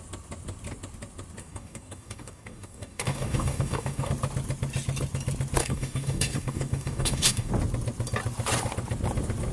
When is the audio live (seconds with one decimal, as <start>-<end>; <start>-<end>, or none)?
0.0-1.4; 4.1-5.6; 7.5-9.5